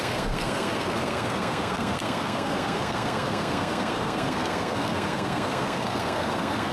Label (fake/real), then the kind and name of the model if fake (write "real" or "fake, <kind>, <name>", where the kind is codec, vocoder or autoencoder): fake, codec, SNAC